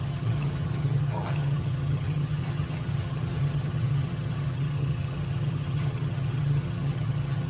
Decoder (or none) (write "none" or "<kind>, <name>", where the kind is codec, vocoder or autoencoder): vocoder, HiFi-GAN